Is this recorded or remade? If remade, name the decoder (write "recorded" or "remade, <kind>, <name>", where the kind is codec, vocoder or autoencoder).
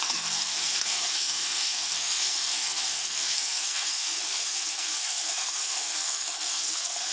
remade, codec, SNAC